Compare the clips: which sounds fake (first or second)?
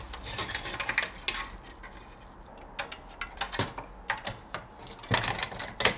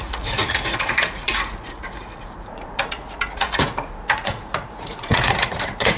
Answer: second